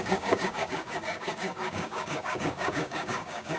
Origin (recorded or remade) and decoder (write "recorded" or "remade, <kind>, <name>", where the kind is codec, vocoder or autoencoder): remade, codec, DAC